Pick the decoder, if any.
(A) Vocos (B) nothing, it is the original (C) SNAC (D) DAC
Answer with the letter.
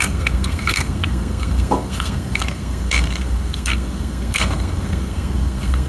C